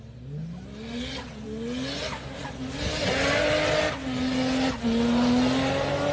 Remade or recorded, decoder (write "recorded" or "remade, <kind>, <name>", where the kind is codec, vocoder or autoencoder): recorded